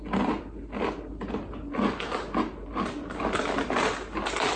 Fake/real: real